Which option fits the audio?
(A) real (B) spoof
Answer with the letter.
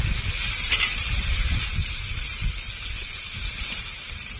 A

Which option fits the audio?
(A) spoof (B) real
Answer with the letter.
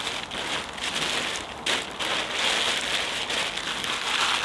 B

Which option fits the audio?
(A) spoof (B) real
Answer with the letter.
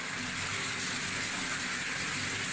B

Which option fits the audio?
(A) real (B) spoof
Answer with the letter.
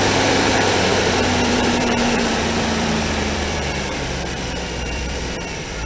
B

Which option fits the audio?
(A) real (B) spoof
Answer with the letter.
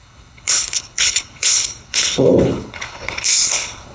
B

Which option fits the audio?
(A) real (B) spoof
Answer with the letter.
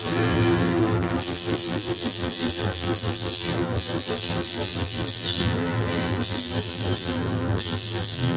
B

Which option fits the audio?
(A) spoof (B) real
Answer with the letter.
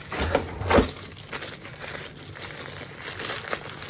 B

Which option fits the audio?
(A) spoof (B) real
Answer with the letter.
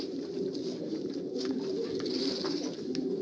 A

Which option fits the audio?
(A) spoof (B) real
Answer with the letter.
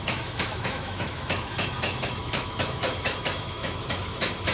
A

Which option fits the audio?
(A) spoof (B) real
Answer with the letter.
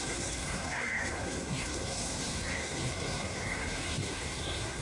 A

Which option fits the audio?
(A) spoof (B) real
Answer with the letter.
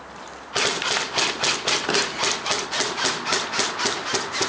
B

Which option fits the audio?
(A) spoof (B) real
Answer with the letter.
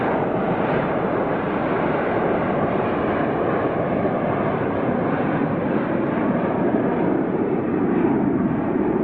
A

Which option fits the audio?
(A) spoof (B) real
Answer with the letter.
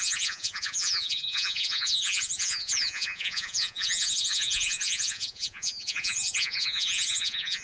A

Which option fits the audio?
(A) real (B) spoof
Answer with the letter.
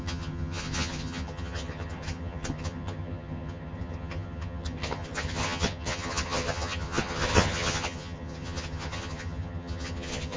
B